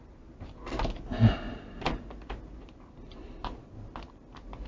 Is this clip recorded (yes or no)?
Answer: yes